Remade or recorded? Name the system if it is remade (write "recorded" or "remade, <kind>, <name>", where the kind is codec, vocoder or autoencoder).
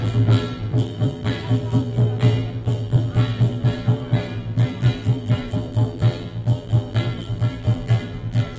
remade, vocoder, BigVGAN v2